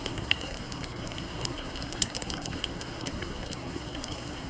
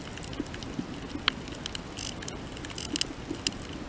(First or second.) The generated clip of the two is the first